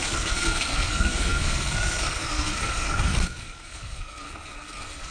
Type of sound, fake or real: fake